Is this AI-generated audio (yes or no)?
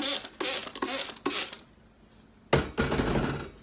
no